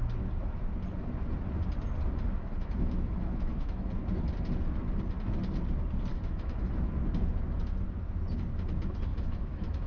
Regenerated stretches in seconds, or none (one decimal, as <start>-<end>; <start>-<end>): 2.4-3.9; 6.1-6.6; 9.1-9.9